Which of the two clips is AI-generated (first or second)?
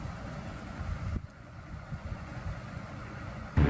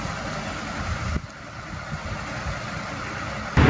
first